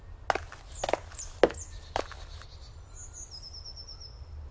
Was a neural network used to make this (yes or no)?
no